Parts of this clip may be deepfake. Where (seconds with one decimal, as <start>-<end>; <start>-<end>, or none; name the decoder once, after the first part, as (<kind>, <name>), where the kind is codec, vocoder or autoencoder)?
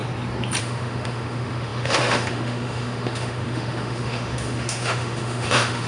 0.6-5.9 (autoencoder, DAC-VAE)